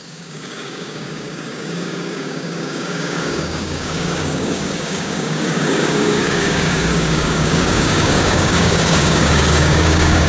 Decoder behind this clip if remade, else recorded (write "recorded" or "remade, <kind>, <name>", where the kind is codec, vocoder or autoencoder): remade, codec, DAC